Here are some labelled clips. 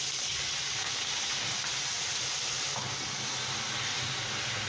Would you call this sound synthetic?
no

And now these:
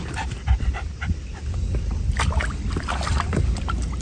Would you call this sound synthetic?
yes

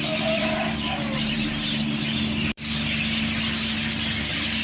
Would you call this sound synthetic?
yes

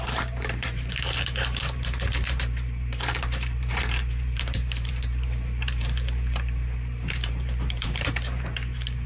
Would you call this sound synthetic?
yes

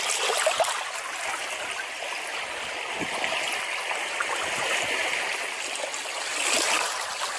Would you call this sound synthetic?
no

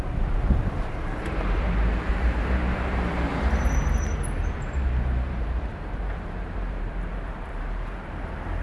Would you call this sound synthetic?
yes